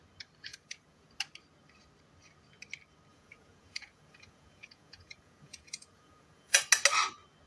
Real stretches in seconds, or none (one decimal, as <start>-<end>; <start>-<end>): 0.0-0.5; 1.1-3.1; 6.6-7.5